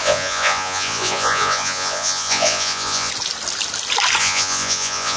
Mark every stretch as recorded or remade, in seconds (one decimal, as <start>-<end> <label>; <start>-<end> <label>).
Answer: 0.0-3.1 remade; 3.1-4.2 recorded; 4.2-5.2 remade